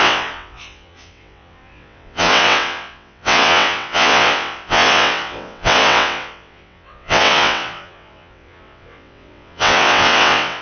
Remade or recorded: remade